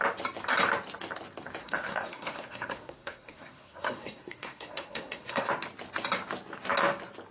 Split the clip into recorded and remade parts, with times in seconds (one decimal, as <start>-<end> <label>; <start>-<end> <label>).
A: 0.0-1.6 recorded; 1.6-5.5 remade; 5.5-7.3 recorded